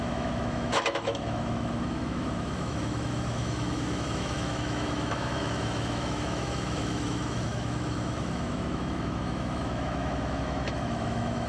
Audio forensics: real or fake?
fake